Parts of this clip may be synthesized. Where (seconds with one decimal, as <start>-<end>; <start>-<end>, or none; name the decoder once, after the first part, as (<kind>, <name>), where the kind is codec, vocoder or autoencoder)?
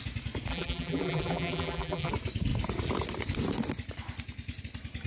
0.5-2.1 (vocoder, BigVGAN v2)